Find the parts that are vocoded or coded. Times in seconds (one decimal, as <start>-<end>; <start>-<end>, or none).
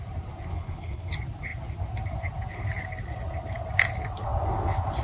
0.5-1.1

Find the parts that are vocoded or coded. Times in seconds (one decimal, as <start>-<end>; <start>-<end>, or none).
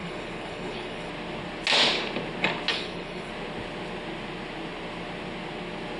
0.0-1.1; 2.7-3.3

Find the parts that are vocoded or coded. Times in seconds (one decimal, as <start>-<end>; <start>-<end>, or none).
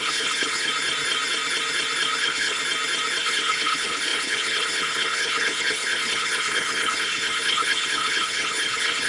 0.0-0.7; 2.2-2.6; 3.2-9.1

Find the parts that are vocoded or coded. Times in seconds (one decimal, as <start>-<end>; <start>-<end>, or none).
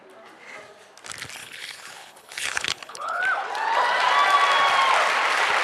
1.4-3.2